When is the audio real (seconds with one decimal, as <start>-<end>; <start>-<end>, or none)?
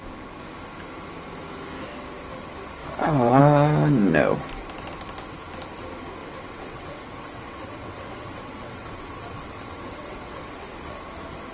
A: 0.0-2.8; 3.4-6.2; 11.0-11.5